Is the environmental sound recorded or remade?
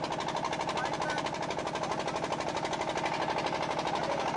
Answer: recorded